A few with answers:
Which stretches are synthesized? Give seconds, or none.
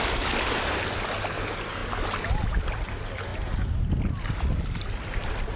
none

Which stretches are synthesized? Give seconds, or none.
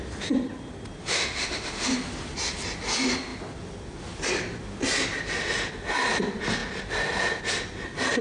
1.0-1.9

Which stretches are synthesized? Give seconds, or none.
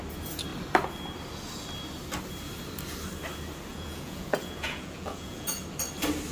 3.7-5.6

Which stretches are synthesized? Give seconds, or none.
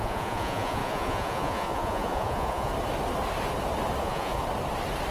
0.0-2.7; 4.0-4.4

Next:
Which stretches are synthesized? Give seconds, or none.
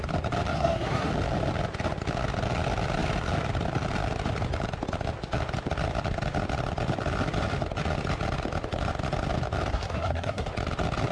0.5-1.1; 9.7-10.5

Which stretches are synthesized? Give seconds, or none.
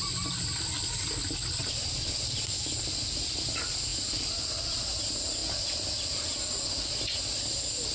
none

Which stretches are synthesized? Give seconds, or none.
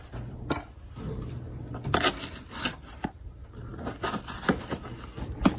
none